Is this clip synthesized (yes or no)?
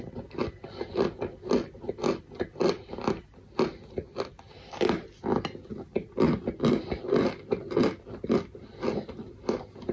no